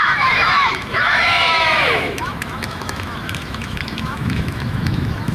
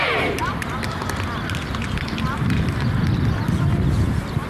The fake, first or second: first